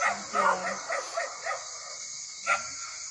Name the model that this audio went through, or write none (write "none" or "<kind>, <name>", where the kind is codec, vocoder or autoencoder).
none